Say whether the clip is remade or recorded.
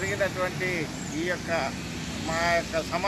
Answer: recorded